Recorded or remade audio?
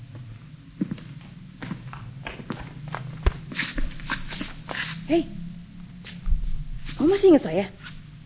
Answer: recorded